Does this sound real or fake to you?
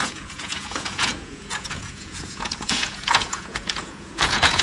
fake